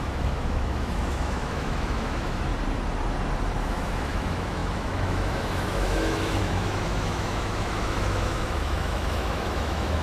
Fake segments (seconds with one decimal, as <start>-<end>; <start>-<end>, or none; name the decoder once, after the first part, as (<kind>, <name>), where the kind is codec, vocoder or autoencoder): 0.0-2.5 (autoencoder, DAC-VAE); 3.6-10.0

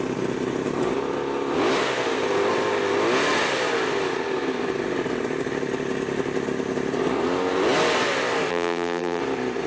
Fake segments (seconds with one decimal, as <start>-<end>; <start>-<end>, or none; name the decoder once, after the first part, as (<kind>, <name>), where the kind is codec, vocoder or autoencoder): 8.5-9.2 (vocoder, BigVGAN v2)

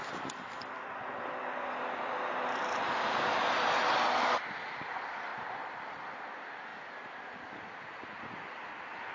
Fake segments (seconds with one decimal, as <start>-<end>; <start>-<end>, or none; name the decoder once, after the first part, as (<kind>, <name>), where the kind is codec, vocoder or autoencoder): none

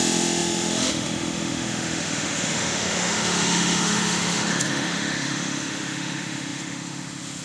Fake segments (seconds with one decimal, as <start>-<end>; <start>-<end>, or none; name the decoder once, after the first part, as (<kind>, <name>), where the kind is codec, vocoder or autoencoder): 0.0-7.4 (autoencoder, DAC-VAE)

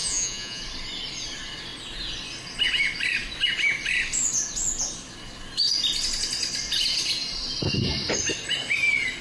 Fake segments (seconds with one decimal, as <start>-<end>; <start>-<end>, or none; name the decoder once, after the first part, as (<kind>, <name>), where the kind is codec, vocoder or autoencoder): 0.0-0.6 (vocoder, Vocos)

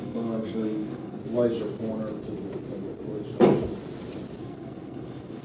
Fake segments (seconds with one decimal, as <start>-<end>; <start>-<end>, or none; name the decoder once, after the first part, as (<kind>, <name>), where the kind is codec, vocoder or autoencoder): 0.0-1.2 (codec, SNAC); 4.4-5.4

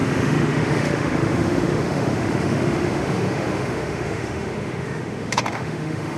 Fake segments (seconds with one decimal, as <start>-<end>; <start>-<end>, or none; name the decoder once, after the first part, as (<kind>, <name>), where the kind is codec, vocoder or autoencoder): 0.0-6.2 (autoencoder, DAC-VAE)